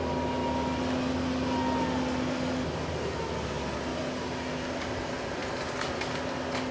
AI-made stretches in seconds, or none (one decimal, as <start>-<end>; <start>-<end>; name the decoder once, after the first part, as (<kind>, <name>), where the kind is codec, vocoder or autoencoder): none